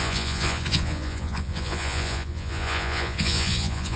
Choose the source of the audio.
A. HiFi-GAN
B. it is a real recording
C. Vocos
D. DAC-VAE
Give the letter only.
C